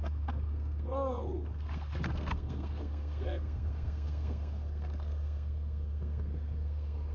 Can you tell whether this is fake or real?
fake